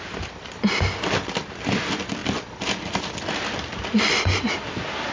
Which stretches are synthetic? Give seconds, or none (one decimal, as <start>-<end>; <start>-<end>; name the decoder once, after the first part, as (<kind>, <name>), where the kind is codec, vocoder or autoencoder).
none